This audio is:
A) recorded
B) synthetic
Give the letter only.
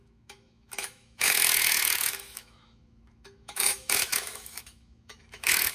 B